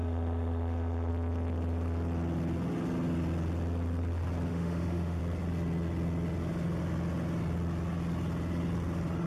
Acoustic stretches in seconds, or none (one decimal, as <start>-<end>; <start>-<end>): 1.1-4.5; 5.2-9.3